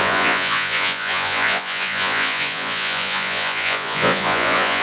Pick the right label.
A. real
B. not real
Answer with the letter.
B